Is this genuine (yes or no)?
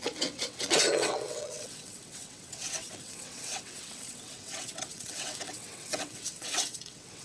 no